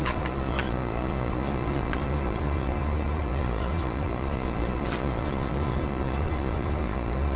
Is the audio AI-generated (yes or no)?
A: yes